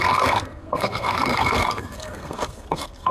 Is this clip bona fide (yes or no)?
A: no